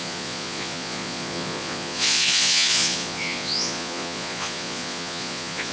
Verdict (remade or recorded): remade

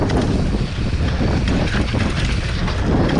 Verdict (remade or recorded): recorded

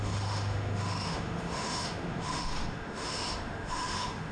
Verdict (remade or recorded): remade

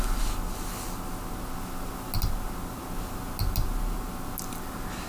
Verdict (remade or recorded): recorded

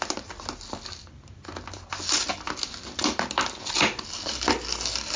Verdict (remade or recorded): recorded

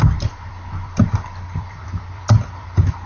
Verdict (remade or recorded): remade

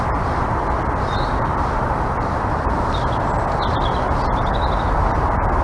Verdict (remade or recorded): recorded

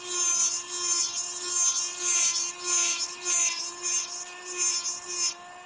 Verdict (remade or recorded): recorded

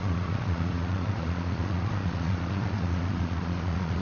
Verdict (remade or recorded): remade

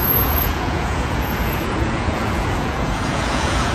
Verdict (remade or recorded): remade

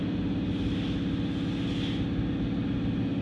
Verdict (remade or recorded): recorded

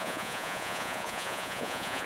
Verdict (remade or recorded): remade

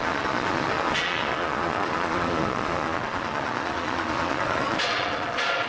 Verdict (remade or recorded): remade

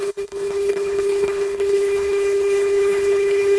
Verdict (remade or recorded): remade